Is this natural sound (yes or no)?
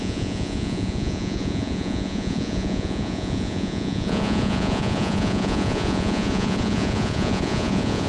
no